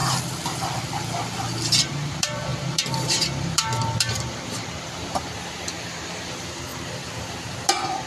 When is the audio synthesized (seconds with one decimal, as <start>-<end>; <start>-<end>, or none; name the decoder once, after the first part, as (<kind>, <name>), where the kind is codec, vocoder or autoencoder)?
1.8-6.7 (vocoder, BigVGAN v2); 7.4-8.1

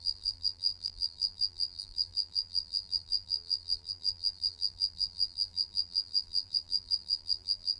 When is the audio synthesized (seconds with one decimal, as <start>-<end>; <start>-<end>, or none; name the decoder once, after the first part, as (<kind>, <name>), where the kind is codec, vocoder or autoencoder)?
0.0-7.8 (vocoder, BigVGAN v2)

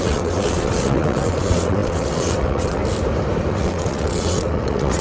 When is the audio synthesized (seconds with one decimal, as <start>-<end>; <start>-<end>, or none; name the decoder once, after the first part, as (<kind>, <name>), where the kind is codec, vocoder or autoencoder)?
0.0-2.8 (vocoder, WaveNeXt); 3.5-5.0

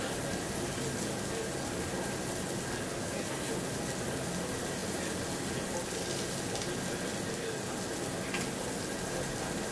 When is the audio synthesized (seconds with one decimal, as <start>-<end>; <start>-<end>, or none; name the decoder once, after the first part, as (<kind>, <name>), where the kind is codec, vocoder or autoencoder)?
2.9-3.5 (codec, SNAC)

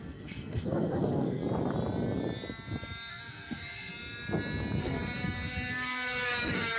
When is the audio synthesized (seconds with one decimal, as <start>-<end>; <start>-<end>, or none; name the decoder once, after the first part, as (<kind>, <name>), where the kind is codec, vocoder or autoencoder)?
0.0-1.4 (codec, SNAC); 3.1-3.9; 4.8-6.8